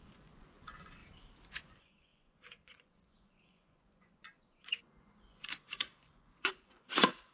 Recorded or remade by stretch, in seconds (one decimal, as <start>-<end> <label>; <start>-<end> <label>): 0.0-1.0 remade; 1.0-1.6 recorded; 1.6-7.3 remade